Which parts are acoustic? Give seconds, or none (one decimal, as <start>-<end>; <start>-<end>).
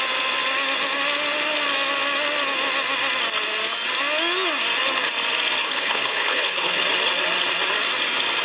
0.0-5.6; 6.8-8.4